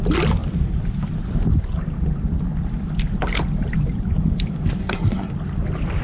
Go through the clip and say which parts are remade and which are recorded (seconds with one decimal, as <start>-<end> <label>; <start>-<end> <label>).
0.0-4.8 recorded; 4.8-5.3 remade; 5.3-6.0 recorded